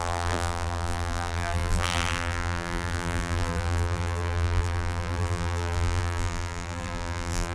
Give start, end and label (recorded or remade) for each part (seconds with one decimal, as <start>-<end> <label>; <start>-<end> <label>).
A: 0.0-7.5 remade